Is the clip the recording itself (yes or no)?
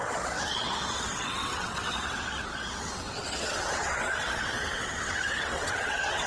no